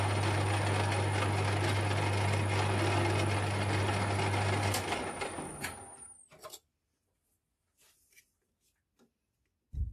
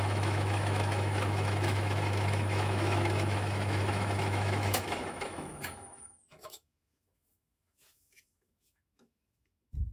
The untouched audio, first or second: first